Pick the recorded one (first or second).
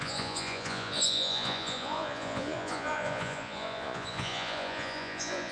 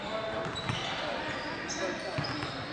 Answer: second